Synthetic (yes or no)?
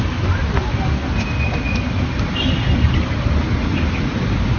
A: no